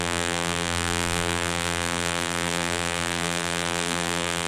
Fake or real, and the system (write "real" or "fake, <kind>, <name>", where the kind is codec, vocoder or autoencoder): fake, vocoder, BigVGAN v2